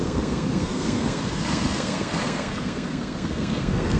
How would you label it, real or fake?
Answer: fake